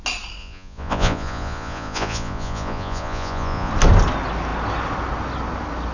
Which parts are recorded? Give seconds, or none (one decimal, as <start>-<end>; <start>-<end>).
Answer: 0.0-0.4; 3.7-5.9